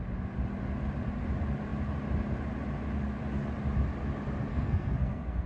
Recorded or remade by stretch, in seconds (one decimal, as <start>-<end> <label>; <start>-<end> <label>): 0.0-4.5 recorded; 4.5-5.5 remade